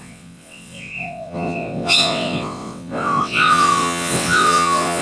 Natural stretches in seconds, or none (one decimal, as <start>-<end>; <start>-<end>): none